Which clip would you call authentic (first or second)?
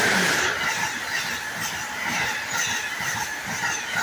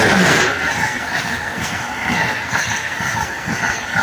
first